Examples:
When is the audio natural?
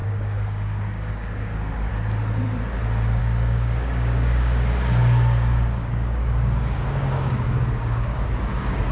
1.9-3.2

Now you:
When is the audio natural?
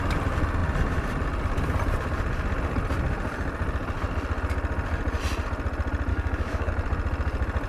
0.0-6.1; 6.7-7.7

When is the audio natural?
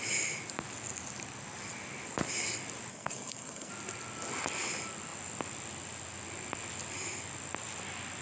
0.0-2.9; 3.7-8.2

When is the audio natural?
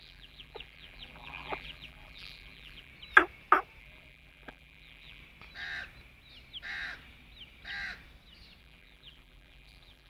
2.9-3.8; 5.2-8.6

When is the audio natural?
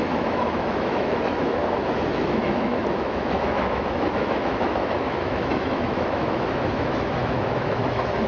1.6-2.1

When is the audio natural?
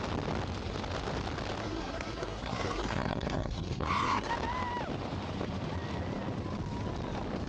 0.0-1.6; 4.3-7.5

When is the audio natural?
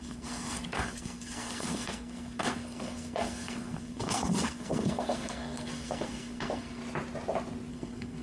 6.8-7.7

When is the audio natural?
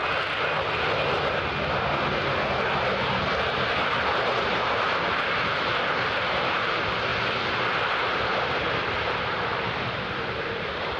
0.0-5.0; 7.1-9.2